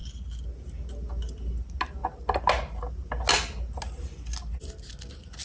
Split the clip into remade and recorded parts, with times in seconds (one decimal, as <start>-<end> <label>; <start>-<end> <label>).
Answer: 0.0-5.4 recorded